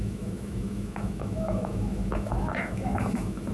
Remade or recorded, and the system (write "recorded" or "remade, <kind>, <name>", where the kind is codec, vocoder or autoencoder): remade, autoencoder, DAC-VAE